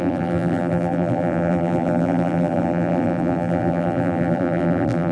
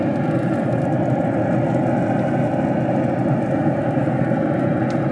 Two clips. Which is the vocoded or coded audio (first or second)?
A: first